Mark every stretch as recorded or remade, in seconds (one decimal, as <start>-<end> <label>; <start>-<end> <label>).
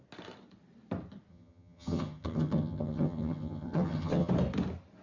0.0-1.3 recorded; 1.3-4.3 remade; 4.3-5.0 recorded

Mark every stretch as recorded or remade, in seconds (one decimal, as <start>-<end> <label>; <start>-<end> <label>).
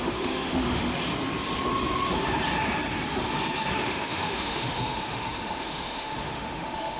0.0-0.9 remade; 0.9-3.7 recorded; 3.7-7.0 remade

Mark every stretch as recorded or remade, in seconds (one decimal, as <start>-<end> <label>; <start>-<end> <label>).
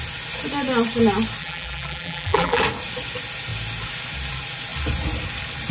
0.0-1.4 recorded; 1.4-2.6 remade; 2.6-5.7 recorded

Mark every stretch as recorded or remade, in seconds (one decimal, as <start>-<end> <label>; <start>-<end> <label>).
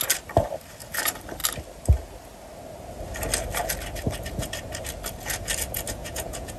0.0-6.0 recorded; 6.0-6.6 remade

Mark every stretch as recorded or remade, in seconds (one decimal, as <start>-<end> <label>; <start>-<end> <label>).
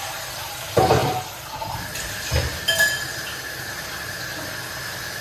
0.0-5.2 recorded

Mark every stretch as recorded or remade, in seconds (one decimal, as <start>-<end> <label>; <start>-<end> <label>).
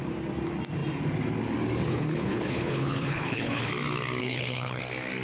0.0-1.9 recorded; 1.9-3.7 remade; 3.7-4.2 recorded; 4.2-4.8 remade; 4.8-5.2 recorded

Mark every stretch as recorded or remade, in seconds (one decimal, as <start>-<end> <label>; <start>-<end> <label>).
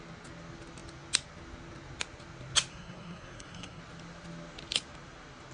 0.0-2.7 recorded; 2.7-3.8 remade; 3.8-5.5 recorded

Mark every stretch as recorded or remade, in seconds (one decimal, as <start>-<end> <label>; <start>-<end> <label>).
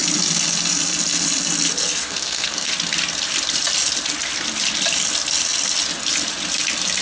0.0-2.0 recorded; 2.0-2.7 remade; 2.7-7.0 recorded